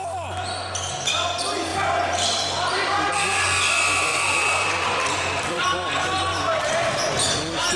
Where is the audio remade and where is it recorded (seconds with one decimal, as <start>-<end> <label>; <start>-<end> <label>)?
0.0-1.7 recorded; 1.7-3.1 remade; 3.1-4.1 recorded; 4.1-7.1 remade; 7.1-7.8 recorded